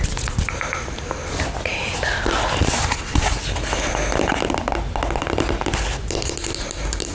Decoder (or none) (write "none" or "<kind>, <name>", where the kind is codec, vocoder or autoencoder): none